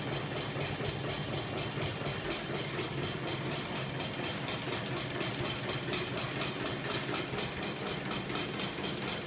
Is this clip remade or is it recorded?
recorded